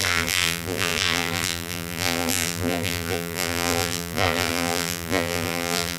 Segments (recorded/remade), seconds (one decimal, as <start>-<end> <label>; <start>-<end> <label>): 0.0-6.0 remade